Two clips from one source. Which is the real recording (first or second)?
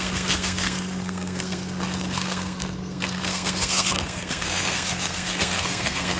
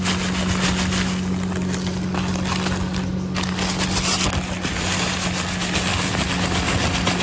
second